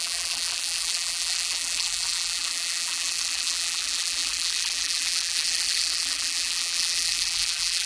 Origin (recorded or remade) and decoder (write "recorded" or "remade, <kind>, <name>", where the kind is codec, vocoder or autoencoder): remade, vocoder, BigVGAN v2